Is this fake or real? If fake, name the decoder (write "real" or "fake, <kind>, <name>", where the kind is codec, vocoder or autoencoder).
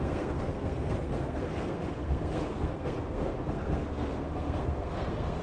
fake, codec, SNAC